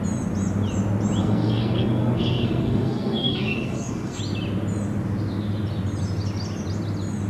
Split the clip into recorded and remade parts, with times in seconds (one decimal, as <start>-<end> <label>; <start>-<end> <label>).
0.0-1.2 recorded; 1.2-4.2 remade; 4.2-7.3 recorded